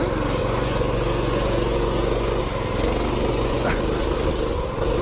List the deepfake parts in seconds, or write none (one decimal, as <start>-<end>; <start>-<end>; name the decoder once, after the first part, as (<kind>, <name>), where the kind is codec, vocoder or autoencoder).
0.4-2.4 (vocoder, Vocos); 3.3-3.8